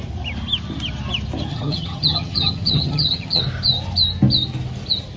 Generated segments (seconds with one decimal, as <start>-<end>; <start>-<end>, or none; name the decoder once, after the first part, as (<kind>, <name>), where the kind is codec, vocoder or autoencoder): 1.5-3.4 (vocoder, HiFi-GAN)